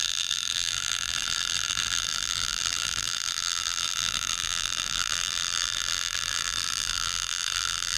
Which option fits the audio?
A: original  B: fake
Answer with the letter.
B